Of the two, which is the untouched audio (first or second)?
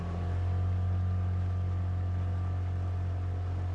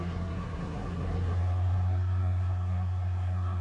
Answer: first